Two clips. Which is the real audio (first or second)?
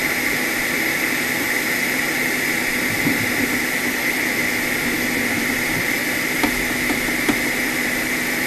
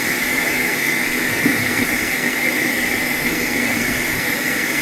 first